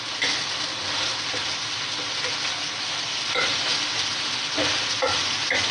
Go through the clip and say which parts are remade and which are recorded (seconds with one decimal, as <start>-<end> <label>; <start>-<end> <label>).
0.0-5.7 recorded